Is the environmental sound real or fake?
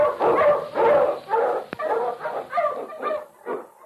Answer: real